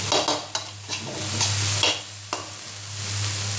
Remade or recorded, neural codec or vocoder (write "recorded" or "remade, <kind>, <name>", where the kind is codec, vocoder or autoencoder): recorded